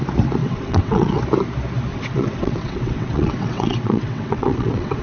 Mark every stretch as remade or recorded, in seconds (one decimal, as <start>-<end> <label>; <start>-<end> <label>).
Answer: 0.0-0.4 recorded; 0.4-1.2 remade; 1.2-1.9 recorded; 1.9-5.0 remade